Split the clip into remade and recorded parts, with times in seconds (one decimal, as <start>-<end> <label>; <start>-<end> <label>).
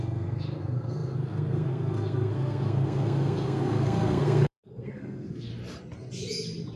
0.0-5.5 remade; 5.5-6.8 recorded